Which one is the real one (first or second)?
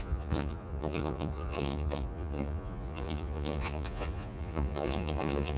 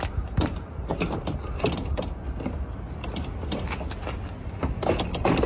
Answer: second